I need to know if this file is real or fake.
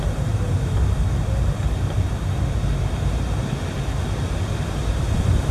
real